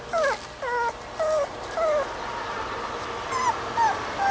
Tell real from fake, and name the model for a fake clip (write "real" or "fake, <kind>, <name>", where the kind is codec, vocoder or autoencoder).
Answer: real